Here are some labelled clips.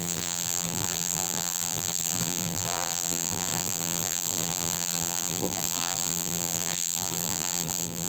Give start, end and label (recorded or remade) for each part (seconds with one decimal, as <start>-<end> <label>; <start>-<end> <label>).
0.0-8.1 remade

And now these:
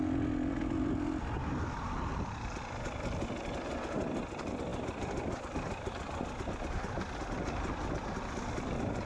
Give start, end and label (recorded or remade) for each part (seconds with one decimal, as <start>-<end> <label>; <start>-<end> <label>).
0.0-9.1 recorded

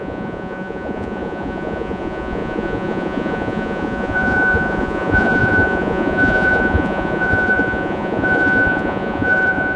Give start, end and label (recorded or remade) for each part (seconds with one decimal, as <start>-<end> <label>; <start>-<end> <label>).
0.0-9.8 remade

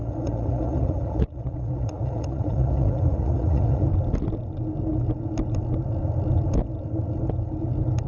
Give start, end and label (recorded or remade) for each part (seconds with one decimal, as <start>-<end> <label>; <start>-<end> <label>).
0.0-3.9 remade; 3.9-8.1 recorded

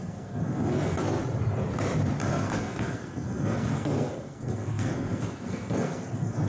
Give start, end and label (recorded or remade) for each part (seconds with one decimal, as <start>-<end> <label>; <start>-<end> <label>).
0.0-1.2 remade; 1.2-2.3 recorded; 2.3-6.5 remade

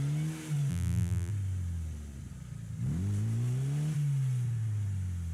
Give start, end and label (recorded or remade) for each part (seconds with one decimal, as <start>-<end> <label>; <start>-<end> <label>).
0.0-0.7 recorded; 0.7-1.3 remade; 1.3-5.3 recorded